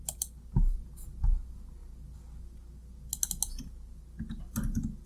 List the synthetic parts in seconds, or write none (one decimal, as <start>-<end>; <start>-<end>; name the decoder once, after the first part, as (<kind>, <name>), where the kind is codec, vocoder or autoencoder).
none